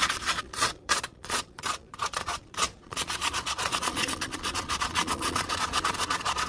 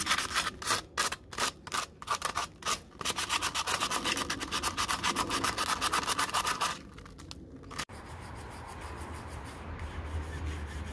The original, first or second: second